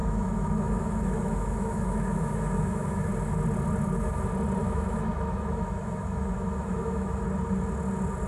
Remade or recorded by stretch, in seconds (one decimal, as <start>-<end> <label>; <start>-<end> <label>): 0.0-3.1 remade; 3.1-4.6 recorded; 4.6-7.2 remade; 7.2-8.3 recorded